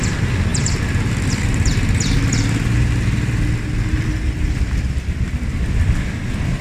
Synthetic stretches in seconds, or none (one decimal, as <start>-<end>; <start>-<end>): none